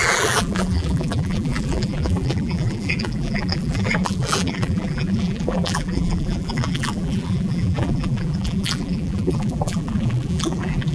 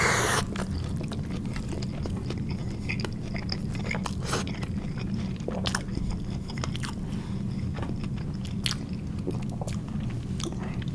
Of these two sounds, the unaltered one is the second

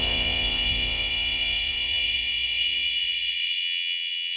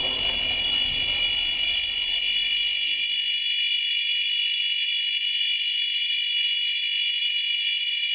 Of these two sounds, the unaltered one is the second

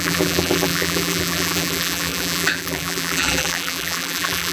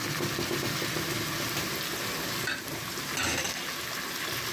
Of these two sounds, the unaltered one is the second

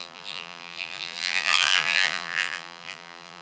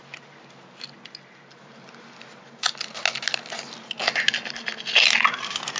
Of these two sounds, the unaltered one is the second